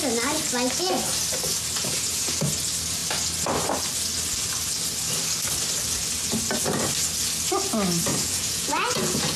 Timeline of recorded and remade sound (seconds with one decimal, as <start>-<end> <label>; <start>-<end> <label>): 0.0-1.8 recorded; 1.8-2.4 remade; 2.4-8.1 recorded; 8.1-9.4 remade